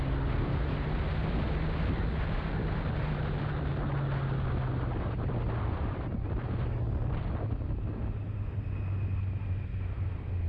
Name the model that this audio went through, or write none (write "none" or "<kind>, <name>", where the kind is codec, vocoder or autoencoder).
none